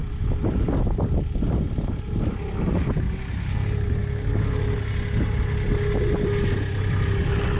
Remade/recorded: recorded